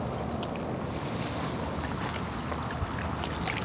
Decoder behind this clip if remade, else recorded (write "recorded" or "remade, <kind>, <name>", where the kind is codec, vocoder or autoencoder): recorded